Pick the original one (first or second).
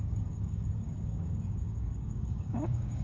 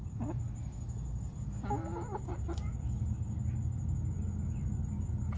second